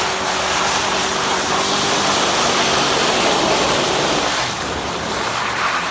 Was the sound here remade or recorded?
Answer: recorded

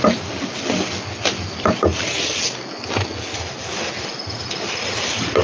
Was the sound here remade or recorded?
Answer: recorded